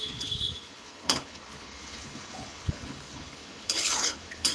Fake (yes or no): yes